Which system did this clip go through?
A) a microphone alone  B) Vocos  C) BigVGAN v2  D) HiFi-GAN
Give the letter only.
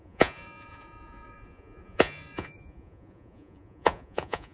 B